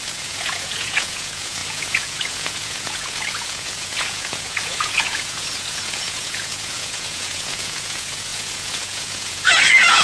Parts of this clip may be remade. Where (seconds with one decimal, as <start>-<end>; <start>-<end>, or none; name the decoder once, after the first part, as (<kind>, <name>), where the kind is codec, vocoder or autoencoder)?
0.0-10.0 (vocoder, Vocos)